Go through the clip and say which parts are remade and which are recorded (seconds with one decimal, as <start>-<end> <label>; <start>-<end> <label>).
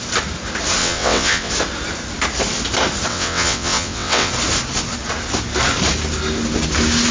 0.0-0.8 recorded; 0.8-1.5 remade; 1.5-3.1 recorded; 3.1-4.3 remade; 4.3-7.1 recorded